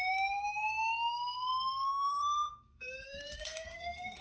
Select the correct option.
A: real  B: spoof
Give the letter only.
B